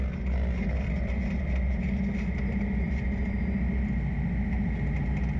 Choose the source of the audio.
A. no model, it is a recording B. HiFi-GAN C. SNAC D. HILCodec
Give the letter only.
A